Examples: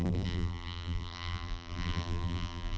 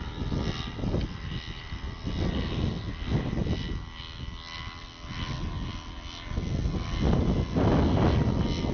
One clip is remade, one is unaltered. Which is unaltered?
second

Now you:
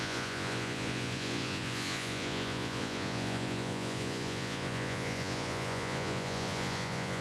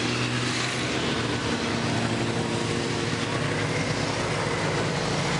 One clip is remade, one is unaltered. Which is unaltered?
second